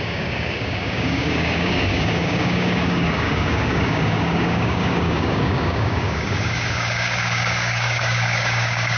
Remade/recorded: remade